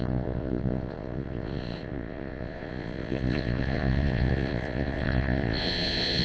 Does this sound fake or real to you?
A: fake